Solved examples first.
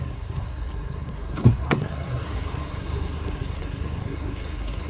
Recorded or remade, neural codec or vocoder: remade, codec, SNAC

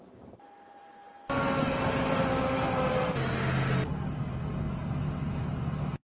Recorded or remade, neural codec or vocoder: recorded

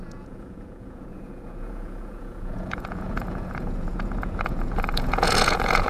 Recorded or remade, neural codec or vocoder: remade, vocoder, Vocos